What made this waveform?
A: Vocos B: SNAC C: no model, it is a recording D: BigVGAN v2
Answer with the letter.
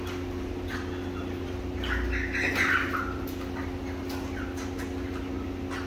C